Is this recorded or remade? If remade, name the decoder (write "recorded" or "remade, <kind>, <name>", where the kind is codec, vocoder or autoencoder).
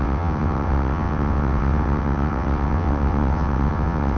remade, vocoder, WaveNeXt